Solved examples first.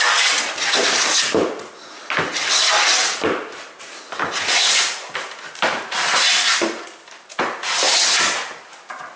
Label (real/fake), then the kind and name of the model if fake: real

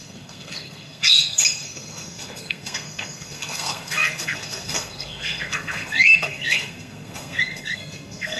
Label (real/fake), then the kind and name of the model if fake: fake, codec, SNAC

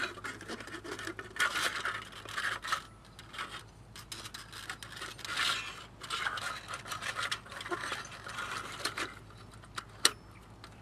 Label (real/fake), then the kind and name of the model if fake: real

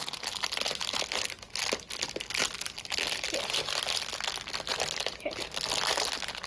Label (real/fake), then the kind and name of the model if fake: real